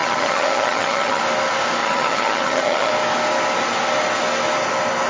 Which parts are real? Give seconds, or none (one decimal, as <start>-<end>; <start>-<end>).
1.2-1.8; 2.9-5.1